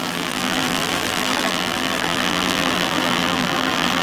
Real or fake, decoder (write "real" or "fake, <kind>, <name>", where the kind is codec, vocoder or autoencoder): fake, vocoder, BigVGAN v2